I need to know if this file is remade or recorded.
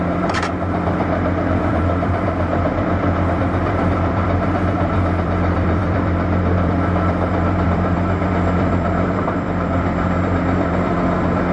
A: remade